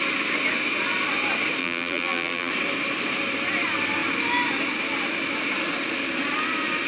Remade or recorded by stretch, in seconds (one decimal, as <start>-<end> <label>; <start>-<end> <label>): 0.0-1.6 recorded; 1.6-2.5 remade; 2.5-6.9 recorded